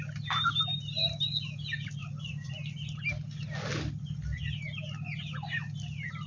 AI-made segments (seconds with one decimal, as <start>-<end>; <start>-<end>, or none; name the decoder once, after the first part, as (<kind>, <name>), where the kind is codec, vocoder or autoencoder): 2.0-5.3 (vocoder, BigVGAN v2)